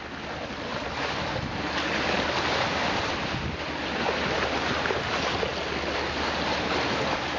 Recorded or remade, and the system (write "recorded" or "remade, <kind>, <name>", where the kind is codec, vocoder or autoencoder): recorded